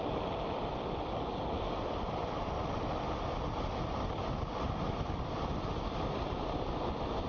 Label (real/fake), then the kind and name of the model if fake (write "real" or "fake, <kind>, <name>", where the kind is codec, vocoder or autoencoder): real